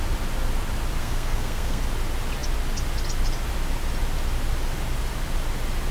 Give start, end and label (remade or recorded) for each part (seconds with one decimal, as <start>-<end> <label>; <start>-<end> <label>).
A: 0.0-1.0 recorded; 1.0-1.8 remade; 1.8-5.9 recorded